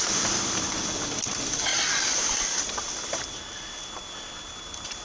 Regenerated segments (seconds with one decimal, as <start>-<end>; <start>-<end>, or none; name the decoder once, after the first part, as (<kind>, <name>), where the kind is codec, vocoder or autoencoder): 1.7-2.7 (vocoder, BigVGAN v2)